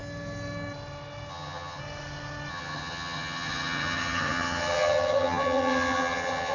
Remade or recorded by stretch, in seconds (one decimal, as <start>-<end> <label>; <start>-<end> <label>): 0.0-1.3 recorded; 1.3-1.8 remade; 1.8-2.5 recorded; 2.5-6.5 remade